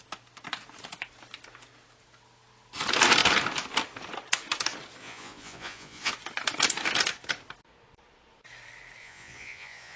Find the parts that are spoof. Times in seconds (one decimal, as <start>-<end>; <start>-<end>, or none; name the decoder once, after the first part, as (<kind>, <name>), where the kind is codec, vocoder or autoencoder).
5.0-6.1 (vocoder, Vocos); 9.0-10.0